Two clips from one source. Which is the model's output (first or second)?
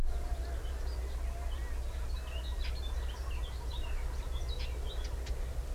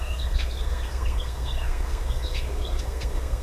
second